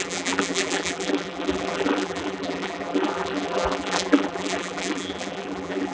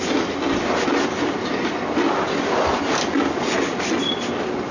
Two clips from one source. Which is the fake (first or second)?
first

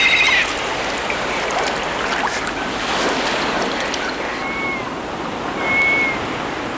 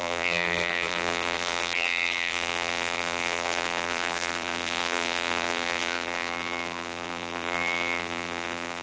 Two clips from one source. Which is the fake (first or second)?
second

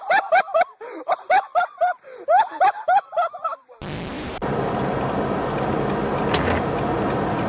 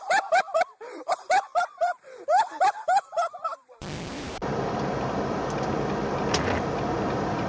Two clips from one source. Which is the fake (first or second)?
second